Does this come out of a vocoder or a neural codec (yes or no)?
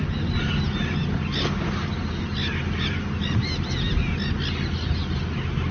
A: no